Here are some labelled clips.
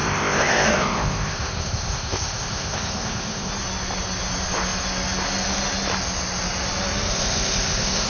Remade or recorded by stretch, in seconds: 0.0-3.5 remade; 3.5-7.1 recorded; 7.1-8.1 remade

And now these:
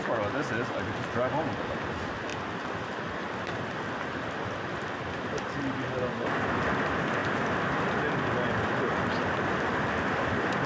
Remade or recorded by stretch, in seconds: 0.0-10.7 recorded

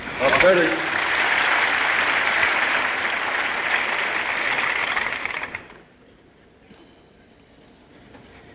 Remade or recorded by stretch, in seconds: 0.0-2.4 recorded; 2.4-3.0 remade; 3.0-4.8 recorded; 4.8-5.8 remade; 5.8-8.5 recorded

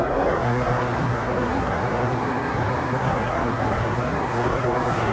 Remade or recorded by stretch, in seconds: 0.0-5.1 remade

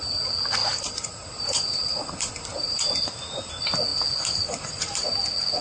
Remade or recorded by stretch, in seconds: 0.0-0.6 recorded; 0.6-3.5 remade; 3.5-5.6 recorded

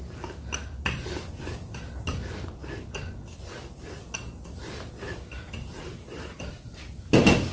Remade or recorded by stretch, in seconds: 0.0-7.5 recorded

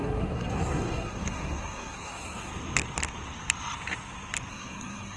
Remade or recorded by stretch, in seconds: 0.0-2.5 remade; 2.5-4.5 recorded; 4.5-5.2 remade

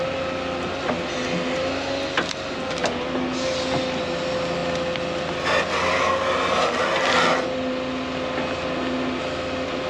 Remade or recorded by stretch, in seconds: 0.0-9.9 recorded